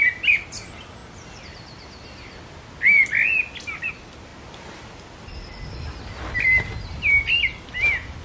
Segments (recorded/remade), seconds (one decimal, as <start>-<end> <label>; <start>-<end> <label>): 0.0-8.2 recorded

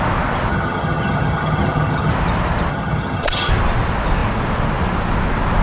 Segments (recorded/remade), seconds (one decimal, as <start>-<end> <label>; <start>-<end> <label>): 0.0-0.5 recorded; 0.5-2.1 remade; 2.1-2.7 recorded; 2.7-3.5 remade; 3.5-5.6 recorded

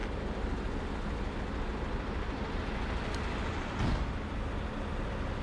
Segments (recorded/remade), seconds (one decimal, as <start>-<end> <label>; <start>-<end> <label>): 0.0-5.4 recorded

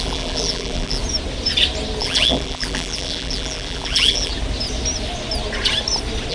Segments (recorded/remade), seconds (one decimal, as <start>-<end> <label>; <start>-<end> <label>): 0.0-1.0 remade; 1.0-2.0 recorded; 2.0-4.3 remade; 4.3-6.3 recorded

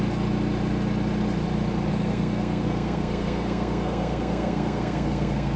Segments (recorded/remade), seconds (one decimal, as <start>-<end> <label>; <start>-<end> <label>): 0.0-1.9 recorded; 1.9-5.6 remade

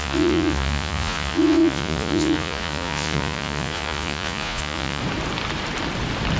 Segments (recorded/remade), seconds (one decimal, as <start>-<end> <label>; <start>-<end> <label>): 0.0-5.0 remade; 5.0-6.4 recorded

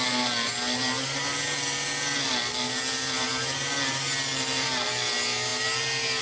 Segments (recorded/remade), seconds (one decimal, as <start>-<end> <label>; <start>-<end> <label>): 0.0-6.2 recorded